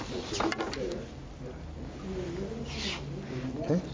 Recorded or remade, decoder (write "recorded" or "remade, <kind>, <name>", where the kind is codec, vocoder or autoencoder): recorded